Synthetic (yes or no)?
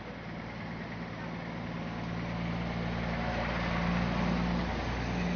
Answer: no